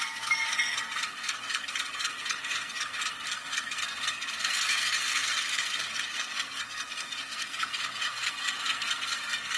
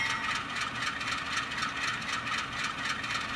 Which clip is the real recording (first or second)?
second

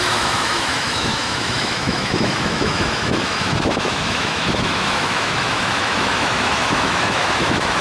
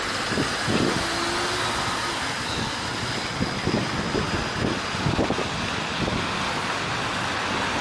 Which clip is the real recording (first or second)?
second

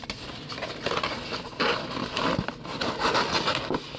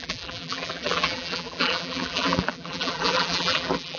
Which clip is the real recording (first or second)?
first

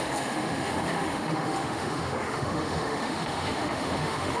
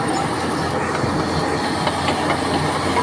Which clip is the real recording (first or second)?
second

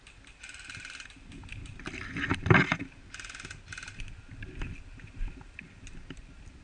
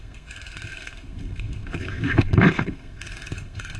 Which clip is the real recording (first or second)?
first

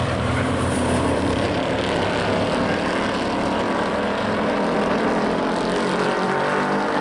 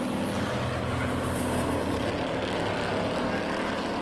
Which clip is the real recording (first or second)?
second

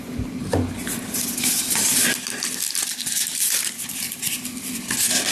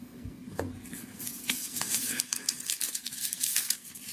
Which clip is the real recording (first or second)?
first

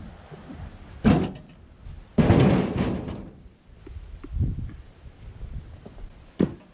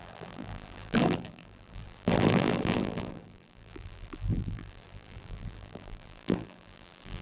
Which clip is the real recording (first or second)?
first